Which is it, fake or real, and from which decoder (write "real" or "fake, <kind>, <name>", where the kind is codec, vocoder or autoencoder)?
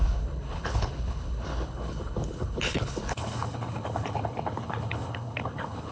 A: fake, codec, HILCodec